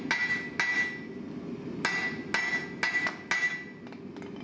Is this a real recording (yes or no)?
yes